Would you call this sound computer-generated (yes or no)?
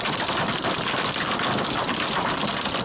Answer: no